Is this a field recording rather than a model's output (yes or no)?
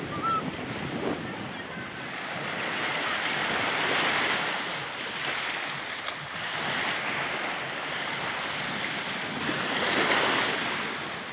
yes